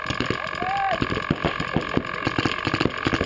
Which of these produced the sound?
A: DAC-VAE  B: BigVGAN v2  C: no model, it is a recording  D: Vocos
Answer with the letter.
B